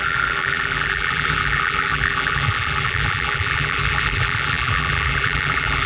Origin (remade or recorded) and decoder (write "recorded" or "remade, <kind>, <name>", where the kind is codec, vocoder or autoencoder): remade, vocoder, BigVGAN v2